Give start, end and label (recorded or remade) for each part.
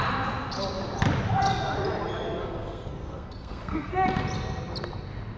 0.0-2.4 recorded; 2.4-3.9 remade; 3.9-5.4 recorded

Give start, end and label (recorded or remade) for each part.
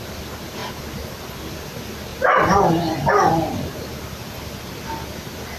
0.0-5.6 recorded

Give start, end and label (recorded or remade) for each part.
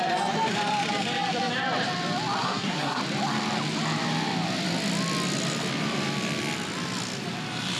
0.0-2.4 recorded; 2.4-3.0 remade; 3.0-7.8 recorded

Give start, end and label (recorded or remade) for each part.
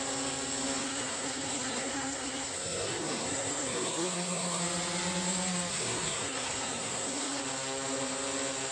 0.0-0.8 recorded; 0.8-4.6 remade; 4.6-5.7 recorded; 5.7-7.4 remade; 7.4-8.7 recorded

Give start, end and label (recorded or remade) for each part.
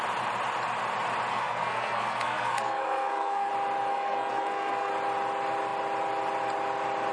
0.0-1.3 recorded; 1.3-3.5 remade; 3.5-3.9 recorded; 3.9-4.9 remade; 4.9-7.1 recorded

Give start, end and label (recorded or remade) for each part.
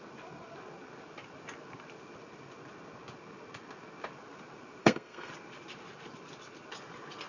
0.0-4.8 recorded; 4.8-5.3 remade; 5.3-7.3 recorded